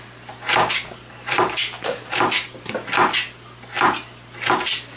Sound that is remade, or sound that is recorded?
recorded